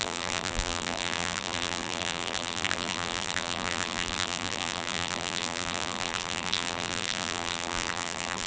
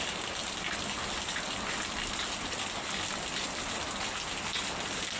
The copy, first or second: first